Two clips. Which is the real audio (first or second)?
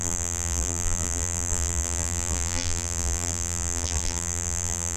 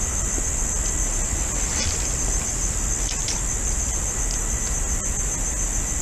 second